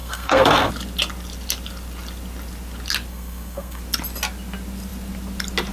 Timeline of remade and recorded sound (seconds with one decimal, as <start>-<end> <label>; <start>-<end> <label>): 0.0-0.7 remade; 0.7-3.1 recorded; 3.1-3.8 remade; 3.8-5.7 recorded